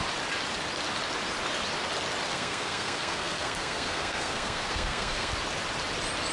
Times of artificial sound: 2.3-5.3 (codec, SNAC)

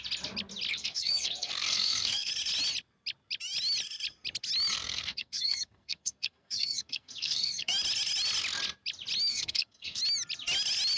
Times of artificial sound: 0.7-2.3 (codec, SNAC); 4.7-7.7; 9.3-10.0

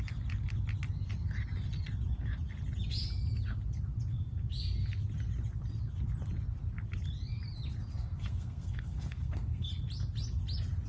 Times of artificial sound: 7.9-9.7 (codec, SNAC)

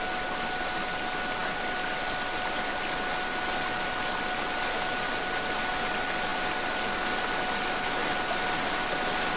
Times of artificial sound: none

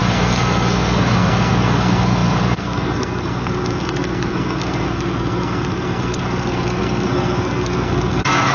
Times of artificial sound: 0.0-8.5 (codec, SNAC)

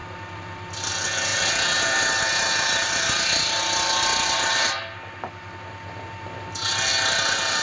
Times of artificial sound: none